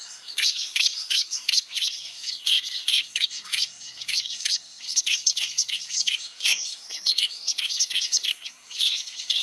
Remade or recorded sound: remade